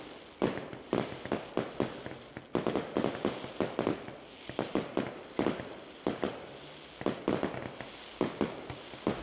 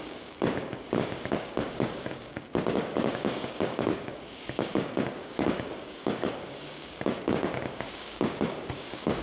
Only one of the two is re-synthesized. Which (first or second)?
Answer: second